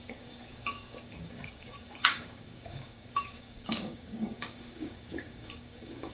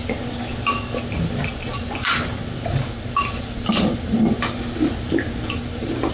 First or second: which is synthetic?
first